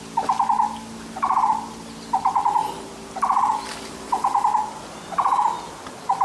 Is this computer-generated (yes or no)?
no